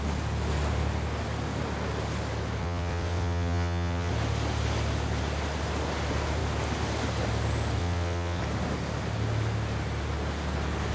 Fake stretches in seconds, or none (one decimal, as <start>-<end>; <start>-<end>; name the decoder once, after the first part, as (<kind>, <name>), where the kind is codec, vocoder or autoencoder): 2.6-4.1 (vocoder, WaveNeXt); 7.8-8.4